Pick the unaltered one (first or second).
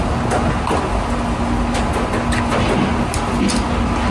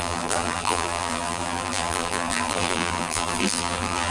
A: first